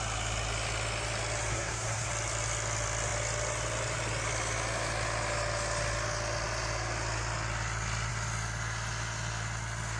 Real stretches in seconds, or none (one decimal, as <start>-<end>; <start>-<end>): 0.0-1.5; 2.1-10.0